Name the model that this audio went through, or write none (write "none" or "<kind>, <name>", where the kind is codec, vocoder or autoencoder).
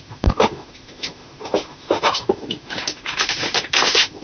autoencoder, DAC-VAE